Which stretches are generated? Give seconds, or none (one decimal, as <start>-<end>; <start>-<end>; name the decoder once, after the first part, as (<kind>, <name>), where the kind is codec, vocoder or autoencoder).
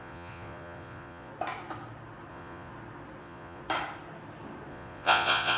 0.0-1.3 (vocoder, Vocos); 2.3-2.7; 3.2-3.6; 4.7-5.6